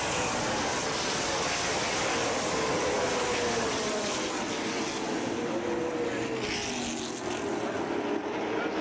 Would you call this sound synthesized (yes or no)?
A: no